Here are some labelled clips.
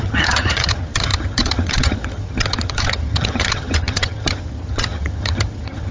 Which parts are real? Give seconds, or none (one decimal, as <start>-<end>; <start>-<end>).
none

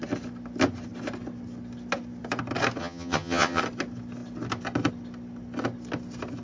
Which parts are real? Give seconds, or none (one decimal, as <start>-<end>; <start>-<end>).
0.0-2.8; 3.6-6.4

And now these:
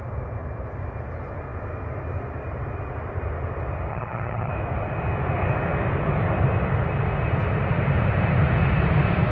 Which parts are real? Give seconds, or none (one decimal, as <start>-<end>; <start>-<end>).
0.0-3.9; 4.5-9.3

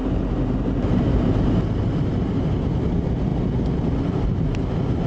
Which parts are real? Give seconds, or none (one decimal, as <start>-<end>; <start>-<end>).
0.0-5.1

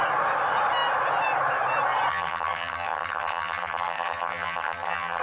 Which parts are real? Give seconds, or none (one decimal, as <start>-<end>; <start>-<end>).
0.0-2.1